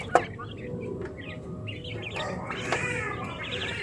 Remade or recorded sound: recorded